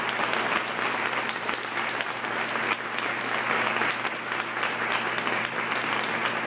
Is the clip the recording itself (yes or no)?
yes